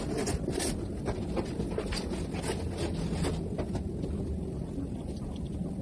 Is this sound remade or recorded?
recorded